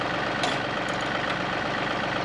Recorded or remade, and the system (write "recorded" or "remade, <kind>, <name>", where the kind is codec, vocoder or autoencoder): recorded